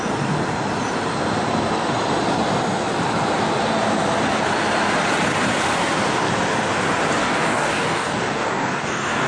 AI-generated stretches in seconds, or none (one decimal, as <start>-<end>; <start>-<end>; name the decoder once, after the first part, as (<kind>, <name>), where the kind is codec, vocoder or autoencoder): 7.2-9.3 (codec, DAC)